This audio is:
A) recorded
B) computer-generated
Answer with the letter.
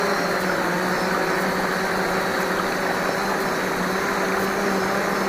A